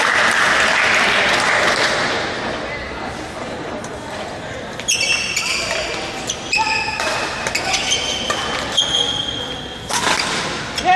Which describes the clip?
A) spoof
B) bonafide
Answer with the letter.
B